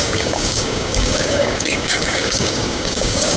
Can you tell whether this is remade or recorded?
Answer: remade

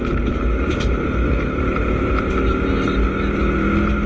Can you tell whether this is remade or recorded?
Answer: recorded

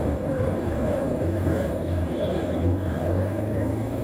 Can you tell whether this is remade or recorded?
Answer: remade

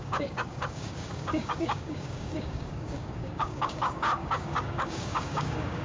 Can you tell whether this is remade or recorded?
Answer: remade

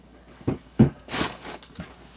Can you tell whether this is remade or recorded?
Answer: remade